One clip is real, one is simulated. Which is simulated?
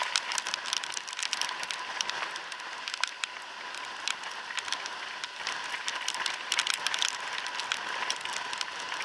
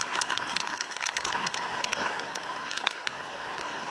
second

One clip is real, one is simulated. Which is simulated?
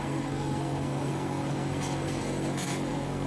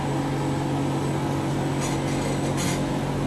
first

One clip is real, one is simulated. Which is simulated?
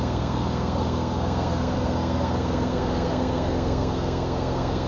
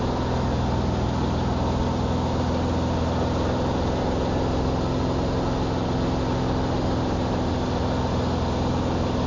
first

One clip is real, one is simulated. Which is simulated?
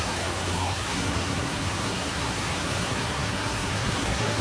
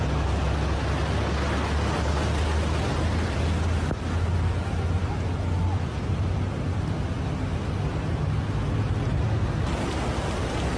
first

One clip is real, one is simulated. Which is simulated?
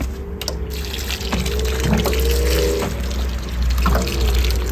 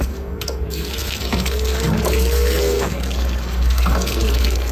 second